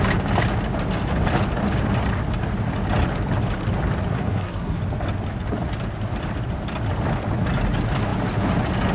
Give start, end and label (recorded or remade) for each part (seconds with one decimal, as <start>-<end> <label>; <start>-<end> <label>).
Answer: 0.0-4.1 recorded; 4.1-4.8 remade; 4.8-8.9 recorded